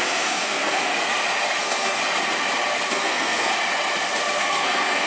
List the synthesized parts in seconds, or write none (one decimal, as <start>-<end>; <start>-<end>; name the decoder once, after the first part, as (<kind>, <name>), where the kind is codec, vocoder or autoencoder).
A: 0.0-0.9 (codec, SNAC); 1.6-2.0; 2.9-3.5; 4.4-5.1

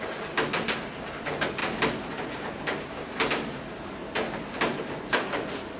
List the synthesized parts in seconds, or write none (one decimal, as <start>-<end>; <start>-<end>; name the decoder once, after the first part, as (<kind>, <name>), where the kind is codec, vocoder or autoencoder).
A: none

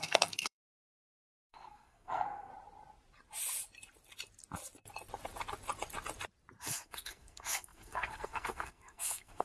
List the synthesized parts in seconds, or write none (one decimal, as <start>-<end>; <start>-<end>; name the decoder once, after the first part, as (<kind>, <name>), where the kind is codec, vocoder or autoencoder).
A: 0.0-2.5 (codec, SNAC); 6.6-9.4

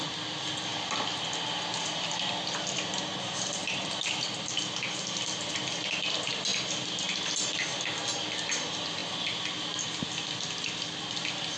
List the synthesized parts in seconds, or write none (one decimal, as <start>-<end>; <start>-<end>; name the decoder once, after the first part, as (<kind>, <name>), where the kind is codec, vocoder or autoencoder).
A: none

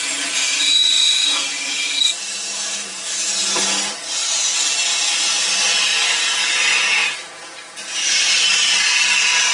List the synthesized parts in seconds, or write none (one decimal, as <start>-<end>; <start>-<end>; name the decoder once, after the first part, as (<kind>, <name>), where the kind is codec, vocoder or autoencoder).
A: none